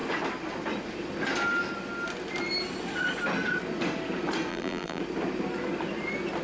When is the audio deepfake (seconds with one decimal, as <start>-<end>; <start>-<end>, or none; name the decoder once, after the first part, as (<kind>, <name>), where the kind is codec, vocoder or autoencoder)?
4.5-5.0 (vocoder, BigVGAN v2)